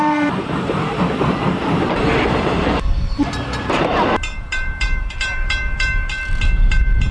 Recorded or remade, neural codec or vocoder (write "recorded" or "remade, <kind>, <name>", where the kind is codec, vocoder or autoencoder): remade, vocoder, BigVGAN v2